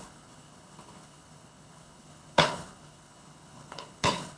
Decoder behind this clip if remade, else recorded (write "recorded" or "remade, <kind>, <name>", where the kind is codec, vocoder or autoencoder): remade, codec, HILCodec